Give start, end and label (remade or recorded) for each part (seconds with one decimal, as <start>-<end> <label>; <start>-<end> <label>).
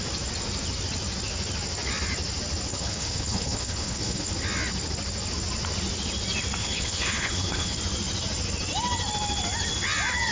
0.0-2.7 recorded; 2.7-4.3 remade; 4.3-6.6 recorded; 6.6-7.8 remade; 7.8-10.3 recorded